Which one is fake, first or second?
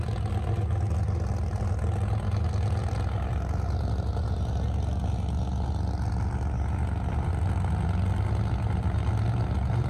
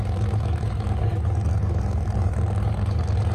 second